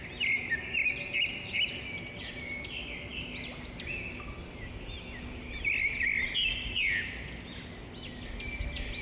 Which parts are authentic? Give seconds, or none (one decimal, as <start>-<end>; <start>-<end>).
0.0-9.0